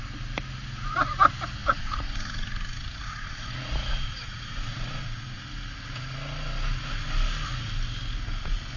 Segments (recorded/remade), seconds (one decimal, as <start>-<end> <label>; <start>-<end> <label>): 0.0-1.6 recorded; 1.6-5.4 remade; 5.4-8.8 recorded